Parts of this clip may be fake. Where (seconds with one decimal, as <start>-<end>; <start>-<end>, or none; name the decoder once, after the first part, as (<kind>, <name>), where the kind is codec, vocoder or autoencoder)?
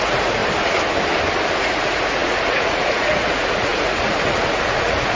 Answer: 0.0-0.4 (vocoder, Vocos); 1.6-5.1